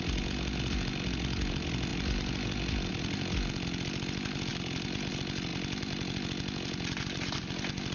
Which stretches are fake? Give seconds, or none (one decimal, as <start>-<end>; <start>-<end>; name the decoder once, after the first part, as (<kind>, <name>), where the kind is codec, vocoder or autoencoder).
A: 4.5-5.1 (vocoder, BigVGAN v2); 5.5-7.2